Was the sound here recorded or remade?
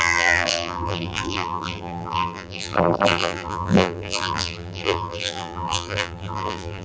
remade